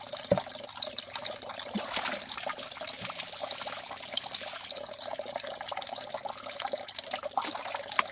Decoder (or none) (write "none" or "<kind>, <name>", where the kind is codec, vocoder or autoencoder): none